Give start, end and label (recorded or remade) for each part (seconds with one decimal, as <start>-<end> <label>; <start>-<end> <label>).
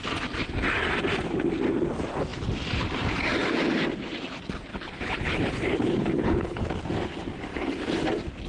0.0-4.7 recorded; 4.7-6.6 remade; 6.6-8.5 recorded